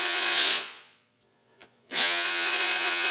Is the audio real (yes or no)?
no